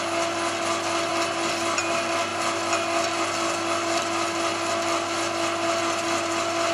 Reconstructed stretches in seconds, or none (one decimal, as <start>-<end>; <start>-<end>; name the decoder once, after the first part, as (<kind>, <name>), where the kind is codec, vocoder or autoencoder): none